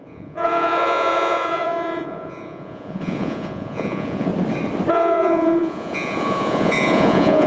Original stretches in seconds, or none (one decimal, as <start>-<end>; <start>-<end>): 4.3-4.9